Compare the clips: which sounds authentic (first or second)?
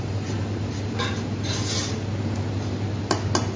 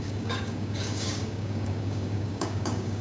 first